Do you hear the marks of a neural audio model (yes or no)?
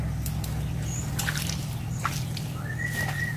no